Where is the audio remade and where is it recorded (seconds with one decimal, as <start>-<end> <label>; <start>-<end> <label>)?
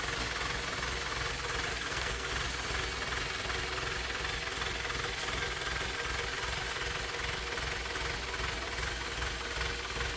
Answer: 0.0-1.7 recorded; 1.7-2.3 remade; 2.3-10.2 recorded